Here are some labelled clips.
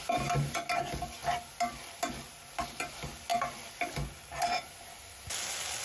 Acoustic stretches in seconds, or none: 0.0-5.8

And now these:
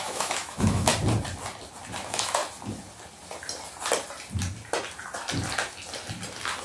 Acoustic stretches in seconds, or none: 0.9-2.0; 2.4-6.6

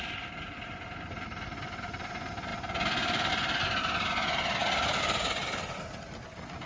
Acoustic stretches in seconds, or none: 0.0-3.8; 5.0-6.7

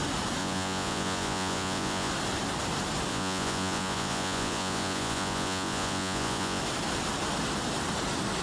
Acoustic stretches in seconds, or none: 0.0-0.4; 2.1-3.1; 6.6-8.4

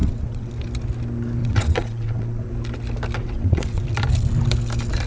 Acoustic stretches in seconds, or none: 0.5-1.4; 2.5-3.2; 3.8-5.1

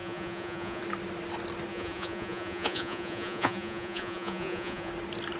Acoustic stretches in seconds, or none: 0.8-1.7; 4.9-5.4

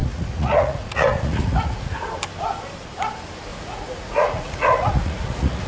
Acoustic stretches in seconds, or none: 1.9-3.5

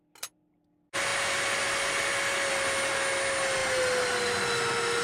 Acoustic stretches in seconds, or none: 0.0-5.0